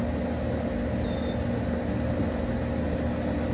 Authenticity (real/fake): real